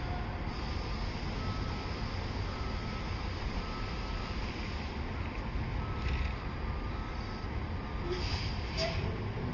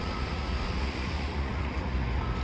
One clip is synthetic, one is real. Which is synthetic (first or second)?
second